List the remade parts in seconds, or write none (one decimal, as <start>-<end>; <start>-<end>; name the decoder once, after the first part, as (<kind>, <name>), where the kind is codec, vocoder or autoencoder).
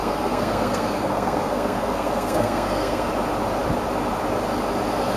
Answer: 0.0-3.1 (codec, SNAC)